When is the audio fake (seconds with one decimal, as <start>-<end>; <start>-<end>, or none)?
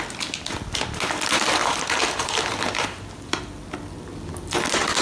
1.6-3.4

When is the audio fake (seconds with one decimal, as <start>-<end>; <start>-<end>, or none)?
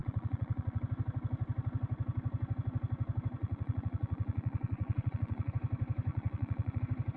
0.0-0.8; 3.4-5.5; 6.1-6.8